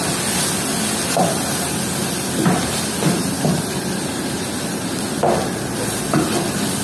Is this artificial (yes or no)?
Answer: no